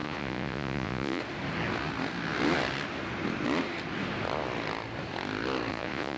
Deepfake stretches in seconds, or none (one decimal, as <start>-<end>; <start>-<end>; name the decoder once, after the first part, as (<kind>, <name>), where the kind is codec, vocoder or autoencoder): 0.0-1.2 (vocoder, Vocos); 5.7-6.2